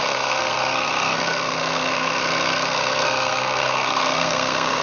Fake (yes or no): yes